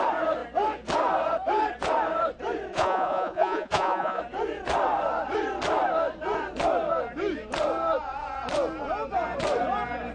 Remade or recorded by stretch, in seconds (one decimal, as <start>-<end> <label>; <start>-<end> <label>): 0.0-2.7 recorded; 2.7-4.2 remade; 4.2-10.1 recorded